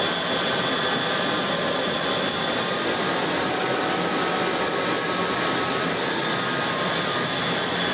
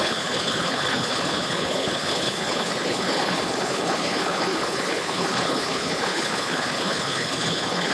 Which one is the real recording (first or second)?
first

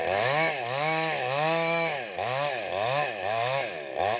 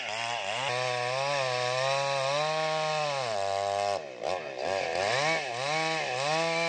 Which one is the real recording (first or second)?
second